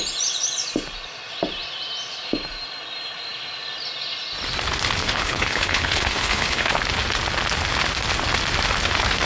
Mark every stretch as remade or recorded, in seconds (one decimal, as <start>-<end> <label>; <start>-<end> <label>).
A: 0.0-5.0 recorded; 5.0-6.7 remade; 6.7-9.3 recorded